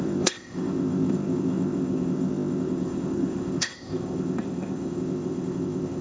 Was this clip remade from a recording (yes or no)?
yes